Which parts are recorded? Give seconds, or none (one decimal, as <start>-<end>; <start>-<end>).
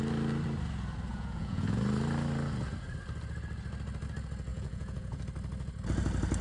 0.0-1.1; 1.8-4.5; 5.2-6.4